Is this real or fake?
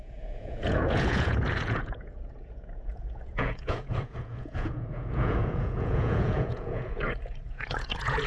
fake